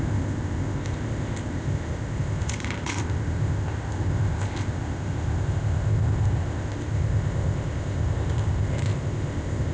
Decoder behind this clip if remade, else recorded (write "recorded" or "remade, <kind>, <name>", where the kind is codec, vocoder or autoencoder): remade, codec, ZipCodec